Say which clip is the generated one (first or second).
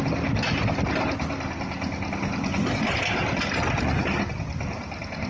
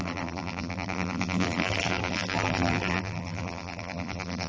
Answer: second